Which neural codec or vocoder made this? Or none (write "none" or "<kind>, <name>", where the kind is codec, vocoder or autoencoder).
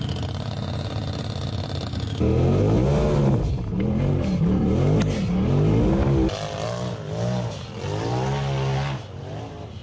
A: none